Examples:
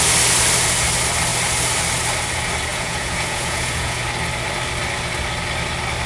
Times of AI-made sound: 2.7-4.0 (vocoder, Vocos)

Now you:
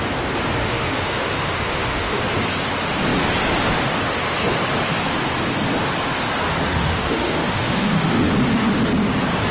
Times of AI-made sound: 0.6-2.2 (autoencoder, DAC-VAE); 6.7-8.3

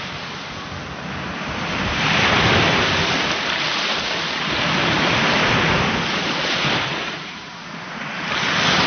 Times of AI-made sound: 6.9-8.0 (vocoder, Vocos)

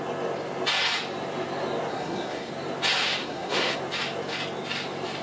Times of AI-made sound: 1.9-2.5 (codec, SNAC); 3.2-3.8

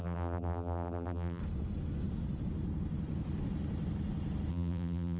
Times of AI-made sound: 0.0-1.4 (vocoder, BigVGAN v2); 4.5-5.2